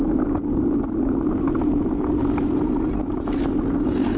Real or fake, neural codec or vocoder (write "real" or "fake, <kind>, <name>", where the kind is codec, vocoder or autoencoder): real